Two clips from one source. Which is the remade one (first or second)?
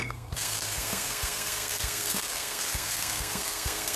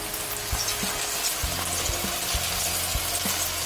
first